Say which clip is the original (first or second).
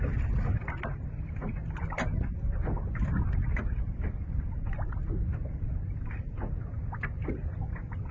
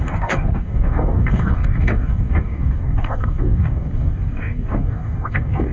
first